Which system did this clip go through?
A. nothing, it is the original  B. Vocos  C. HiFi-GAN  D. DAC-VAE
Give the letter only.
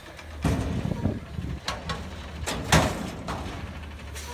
A